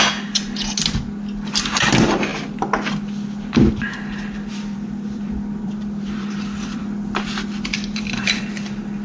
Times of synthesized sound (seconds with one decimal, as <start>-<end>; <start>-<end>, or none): 4.5-6.8; 7.7-8.4